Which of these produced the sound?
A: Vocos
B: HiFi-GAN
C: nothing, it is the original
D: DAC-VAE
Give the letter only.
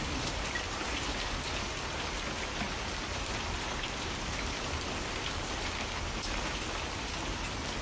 C